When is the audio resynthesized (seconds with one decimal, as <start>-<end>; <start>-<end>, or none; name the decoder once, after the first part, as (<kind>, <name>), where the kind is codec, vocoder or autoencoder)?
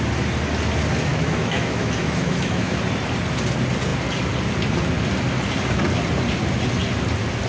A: 1.1-2.8 (autoencoder, DAC-VAE)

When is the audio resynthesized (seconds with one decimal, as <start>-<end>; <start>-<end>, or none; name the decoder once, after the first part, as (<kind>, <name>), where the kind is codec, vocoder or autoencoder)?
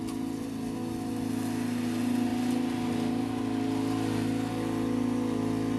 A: none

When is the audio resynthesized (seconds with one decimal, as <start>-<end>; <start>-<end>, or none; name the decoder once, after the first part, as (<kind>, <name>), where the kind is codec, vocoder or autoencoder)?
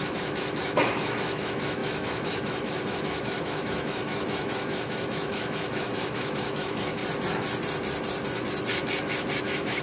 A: 0.0-7.0 (autoencoder, DAC-VAE); 9.4-9.8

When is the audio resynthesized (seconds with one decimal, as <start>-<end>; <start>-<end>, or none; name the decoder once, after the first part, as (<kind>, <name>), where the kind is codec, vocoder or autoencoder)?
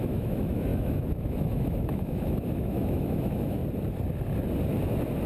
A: 0.0-3.6 (autoencoder, DAC-VAE)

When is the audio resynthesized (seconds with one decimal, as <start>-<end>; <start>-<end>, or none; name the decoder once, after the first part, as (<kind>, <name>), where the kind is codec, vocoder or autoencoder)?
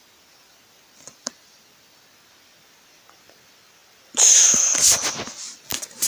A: none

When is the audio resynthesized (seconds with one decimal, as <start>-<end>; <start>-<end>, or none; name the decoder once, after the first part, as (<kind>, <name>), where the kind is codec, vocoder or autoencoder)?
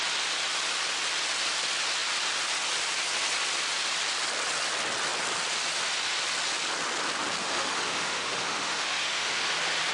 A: 7.4-9.5 (autoencoder, DAC-VAE)